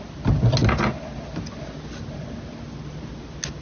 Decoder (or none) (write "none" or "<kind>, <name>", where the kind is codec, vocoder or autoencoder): none